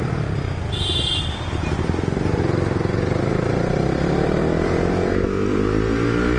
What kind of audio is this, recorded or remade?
recorded